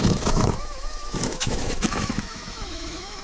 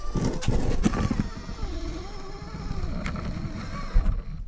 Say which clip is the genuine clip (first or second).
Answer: second